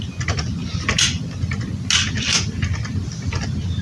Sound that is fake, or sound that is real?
real